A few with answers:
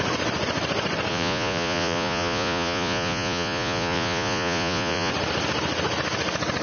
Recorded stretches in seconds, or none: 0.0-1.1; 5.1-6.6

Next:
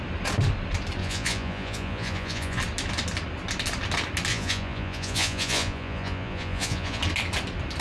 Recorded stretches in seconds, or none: 0.0-1.0; 2.6-4.3; 7.0-7.8